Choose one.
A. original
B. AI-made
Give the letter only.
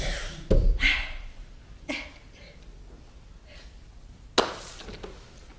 A